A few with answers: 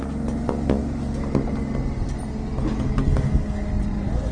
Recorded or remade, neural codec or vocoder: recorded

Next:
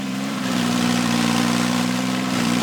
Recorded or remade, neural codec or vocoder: remade, vocoder, BigVGAN v2